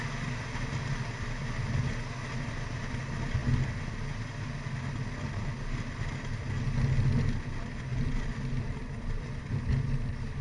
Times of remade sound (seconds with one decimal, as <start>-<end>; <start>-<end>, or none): 7.9-9.4